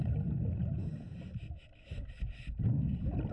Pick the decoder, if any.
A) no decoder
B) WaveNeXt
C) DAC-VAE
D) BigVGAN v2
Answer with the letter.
A